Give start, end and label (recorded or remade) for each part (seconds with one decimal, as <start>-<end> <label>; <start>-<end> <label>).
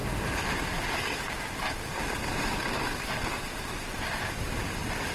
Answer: 0.0-5.1 recorded